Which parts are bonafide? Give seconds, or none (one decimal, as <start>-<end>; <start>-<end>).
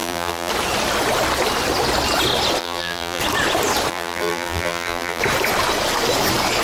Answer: 0.5-2.6; 3.2-3.9; 5.2-6.6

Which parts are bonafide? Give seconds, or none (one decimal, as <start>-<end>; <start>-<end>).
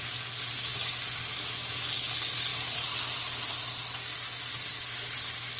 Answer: 0.0-5.6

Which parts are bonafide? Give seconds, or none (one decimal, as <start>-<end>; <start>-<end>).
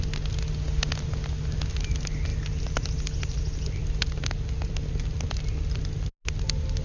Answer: 0.0-6.8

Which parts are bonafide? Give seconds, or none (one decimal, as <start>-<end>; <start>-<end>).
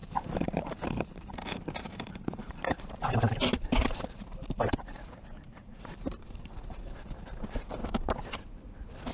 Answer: 7.8-9.1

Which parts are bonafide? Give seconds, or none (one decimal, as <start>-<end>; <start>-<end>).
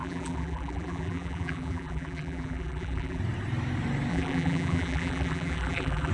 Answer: 3.2-4.1